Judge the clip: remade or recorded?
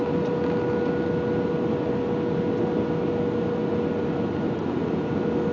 recorded